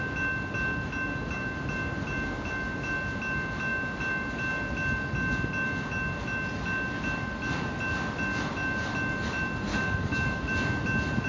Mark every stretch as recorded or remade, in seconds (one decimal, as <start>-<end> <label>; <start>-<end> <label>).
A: 0.0-9.7 recorded; 9.7-10.4 remade; 10.4-11.3 recorded